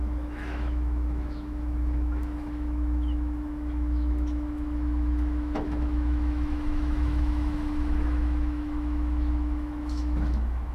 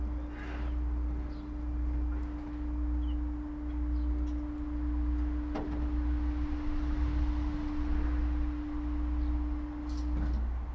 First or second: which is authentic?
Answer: second